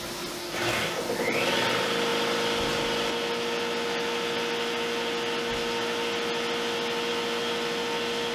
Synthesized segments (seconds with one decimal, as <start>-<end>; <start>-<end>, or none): 0.4-1.0